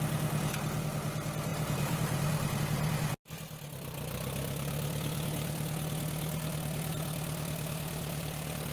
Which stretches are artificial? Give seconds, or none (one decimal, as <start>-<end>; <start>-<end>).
1.5-2.6